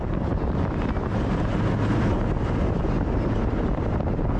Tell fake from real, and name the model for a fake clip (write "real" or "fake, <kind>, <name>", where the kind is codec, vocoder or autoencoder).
real